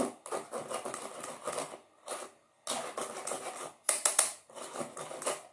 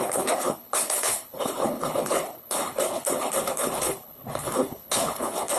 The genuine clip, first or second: first